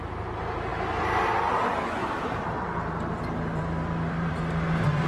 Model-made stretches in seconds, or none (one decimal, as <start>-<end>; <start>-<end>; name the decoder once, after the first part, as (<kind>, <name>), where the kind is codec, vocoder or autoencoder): 2.0-4.3 (vocoder, BigVGAN v2)